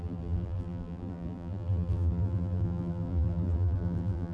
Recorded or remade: remade